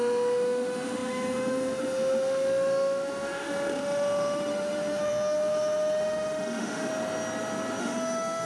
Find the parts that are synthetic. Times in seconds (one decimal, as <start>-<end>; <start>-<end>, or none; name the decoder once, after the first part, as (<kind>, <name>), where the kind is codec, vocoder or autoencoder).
0.0-6.9 (autoencoder, DAC-VAE); 7.8-8.5